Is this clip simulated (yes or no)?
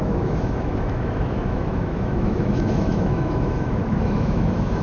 yes